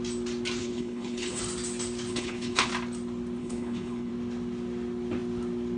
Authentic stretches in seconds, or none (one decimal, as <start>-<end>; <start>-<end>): 0.0-0.6; 1.4-2.1; 2.7-3.4; 4.1-5.8